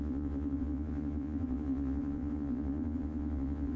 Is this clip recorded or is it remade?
remade